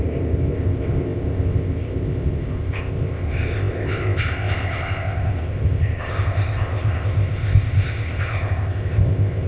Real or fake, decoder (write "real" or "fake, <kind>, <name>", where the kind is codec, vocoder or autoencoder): fake, codec, ZipCodec